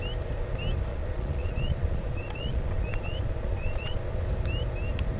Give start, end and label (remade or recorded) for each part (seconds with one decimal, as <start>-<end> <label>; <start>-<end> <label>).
0.0-0.9 recorded; 0.9-4.0 remade; 4.0-5.2 recorded